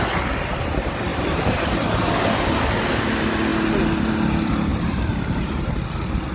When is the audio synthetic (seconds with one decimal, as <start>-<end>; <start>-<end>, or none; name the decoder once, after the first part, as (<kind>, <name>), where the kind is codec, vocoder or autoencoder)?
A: 1.1-1.9 (vocoder, BigVGAN v2); 4.7-5.7